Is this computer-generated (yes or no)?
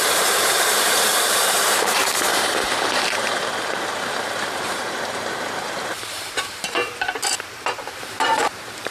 yes